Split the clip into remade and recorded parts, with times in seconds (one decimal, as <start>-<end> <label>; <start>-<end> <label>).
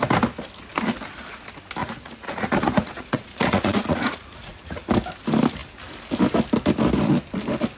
0.0-1.8 recorded; 1.8-4.9 remade; 4.9-7.8 recorded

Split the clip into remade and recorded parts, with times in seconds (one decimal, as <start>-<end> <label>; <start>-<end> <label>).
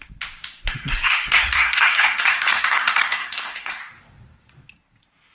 0.0-0.6 recorded; 0.6-3.8 remade; 3.8-5.3 recorded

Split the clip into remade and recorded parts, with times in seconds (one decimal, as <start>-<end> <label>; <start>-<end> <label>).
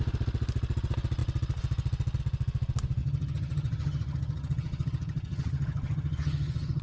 0.0-3.0 recorded; 3.0-6.8 remade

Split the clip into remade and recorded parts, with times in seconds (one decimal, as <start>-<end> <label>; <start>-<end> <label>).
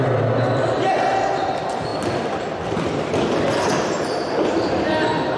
0.0-5.4 recorded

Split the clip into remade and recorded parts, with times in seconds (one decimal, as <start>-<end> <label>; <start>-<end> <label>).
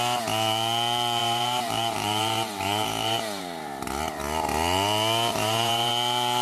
0.0-1.2 recorded; 1.2-3.4 remade; 3.4-5.3 recorded; 5.3-5.9 remade; 5.9-6.4 recorded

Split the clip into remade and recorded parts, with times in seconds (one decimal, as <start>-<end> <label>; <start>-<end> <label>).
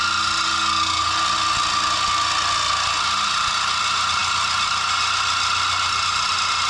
0.0-6.7 recorded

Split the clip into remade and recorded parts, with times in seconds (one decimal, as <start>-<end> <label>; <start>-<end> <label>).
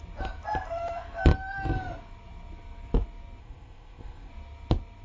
0.0-3.4 recorded; 3.4-4.3 remade; 4.3-5.0 recorded